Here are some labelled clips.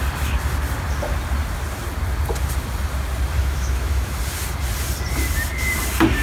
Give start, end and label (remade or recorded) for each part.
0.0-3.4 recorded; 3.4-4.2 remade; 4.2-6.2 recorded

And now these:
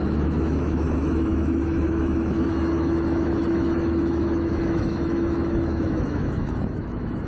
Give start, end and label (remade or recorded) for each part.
0.0-7.3 remade

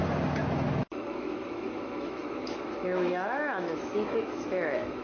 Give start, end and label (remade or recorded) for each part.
0.0-0.8 recorded; 0.8-5.0 remade